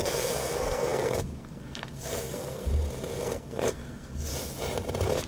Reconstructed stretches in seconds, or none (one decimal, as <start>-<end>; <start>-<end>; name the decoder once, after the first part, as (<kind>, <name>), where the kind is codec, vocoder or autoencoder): 0.0-2.7 (codec, SNAC); 3.2-4.3